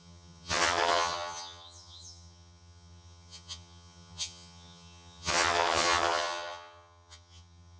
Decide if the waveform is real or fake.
fake